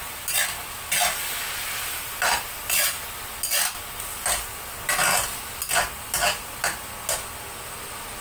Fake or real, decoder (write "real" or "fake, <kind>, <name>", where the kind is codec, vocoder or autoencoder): real